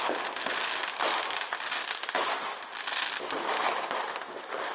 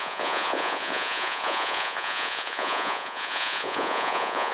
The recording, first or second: first